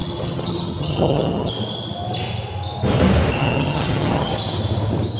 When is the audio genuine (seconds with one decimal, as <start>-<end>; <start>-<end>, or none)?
1.5-3.4; 4.3-5.2